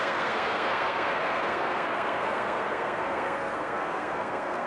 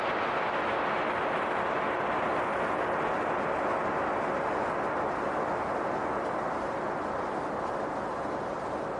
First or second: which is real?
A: second